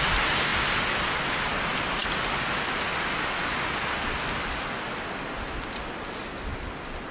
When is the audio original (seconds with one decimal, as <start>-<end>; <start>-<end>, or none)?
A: 0.0-7.1